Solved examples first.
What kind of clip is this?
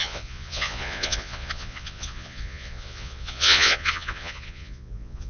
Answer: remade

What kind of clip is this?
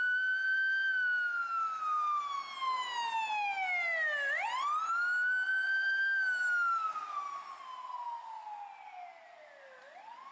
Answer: recorded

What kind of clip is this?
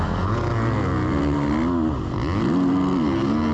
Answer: recorded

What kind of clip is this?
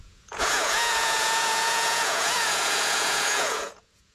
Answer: remade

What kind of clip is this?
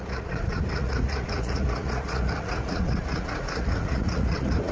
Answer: remade